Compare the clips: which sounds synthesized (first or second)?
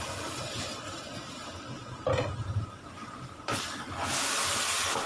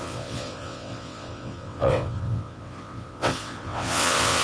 second